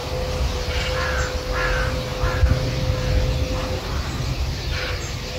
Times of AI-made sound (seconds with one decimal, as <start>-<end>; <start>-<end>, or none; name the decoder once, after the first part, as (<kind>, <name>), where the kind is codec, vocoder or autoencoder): none